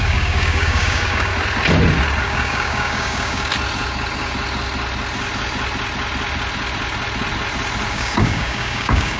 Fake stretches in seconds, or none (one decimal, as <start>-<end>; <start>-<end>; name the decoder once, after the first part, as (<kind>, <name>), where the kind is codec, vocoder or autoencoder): 0.0-1.3 (codec, DAC); 2.2-3.5; 7.9-9.2